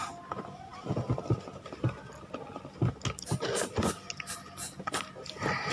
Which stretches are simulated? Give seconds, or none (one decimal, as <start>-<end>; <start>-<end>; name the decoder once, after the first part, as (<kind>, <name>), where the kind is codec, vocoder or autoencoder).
none